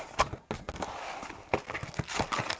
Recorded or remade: recorded